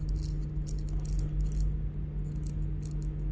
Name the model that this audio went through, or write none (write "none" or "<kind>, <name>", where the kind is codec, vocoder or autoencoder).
none